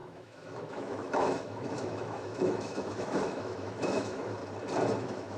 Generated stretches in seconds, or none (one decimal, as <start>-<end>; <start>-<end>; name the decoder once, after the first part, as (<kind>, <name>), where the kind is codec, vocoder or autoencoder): 0.0-4.4 (autoencoder, DAC-VAE); 5.0-5.4